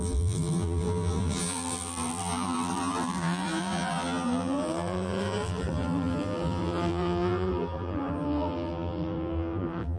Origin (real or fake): fake